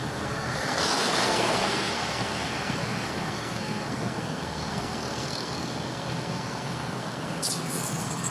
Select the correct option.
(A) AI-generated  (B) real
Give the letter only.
A